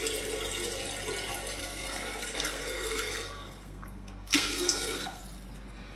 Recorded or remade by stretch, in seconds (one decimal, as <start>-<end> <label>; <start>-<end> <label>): 0.0-1.6 recorded; 1.6-5.2 remade; 5.2-6.0 recorded